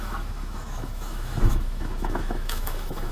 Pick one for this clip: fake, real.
fake